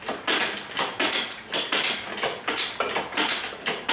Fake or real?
real